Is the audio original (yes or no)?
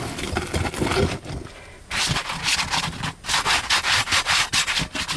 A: yes